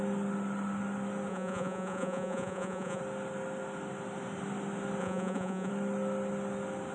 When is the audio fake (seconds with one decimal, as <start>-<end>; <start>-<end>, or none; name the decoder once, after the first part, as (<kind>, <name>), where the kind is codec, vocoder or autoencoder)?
1.3-3.0 (vocoder, Vocos); 5.0-5.7